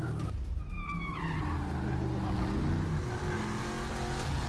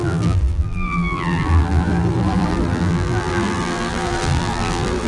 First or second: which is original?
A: first